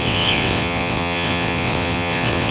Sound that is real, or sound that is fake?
fake